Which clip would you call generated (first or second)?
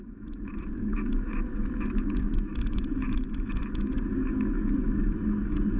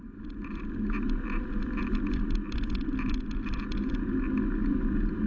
first